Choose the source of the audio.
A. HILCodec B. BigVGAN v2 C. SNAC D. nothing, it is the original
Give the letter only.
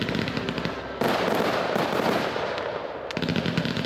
D